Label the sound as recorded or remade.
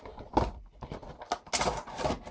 recorded